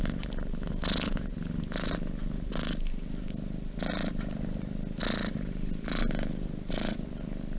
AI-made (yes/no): no